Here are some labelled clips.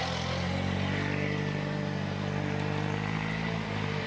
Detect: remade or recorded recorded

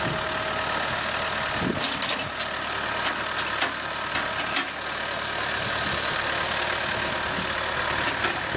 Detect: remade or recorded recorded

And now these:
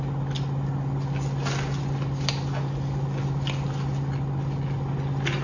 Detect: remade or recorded recorded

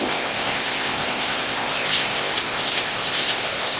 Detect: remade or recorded remade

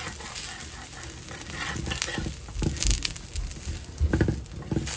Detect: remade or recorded recorded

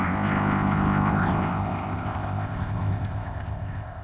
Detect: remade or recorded remade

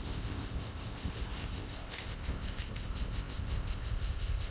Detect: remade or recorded remade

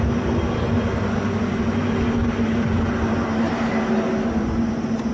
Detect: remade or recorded recorded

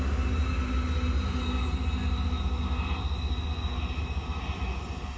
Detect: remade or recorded recorded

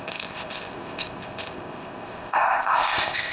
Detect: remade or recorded remade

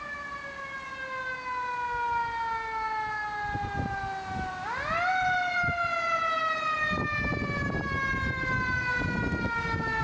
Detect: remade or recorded recorded